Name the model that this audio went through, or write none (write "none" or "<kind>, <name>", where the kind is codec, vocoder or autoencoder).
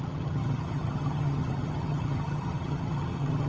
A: vocoder, HiFi-GAN